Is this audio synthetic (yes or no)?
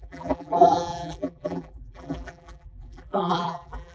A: yes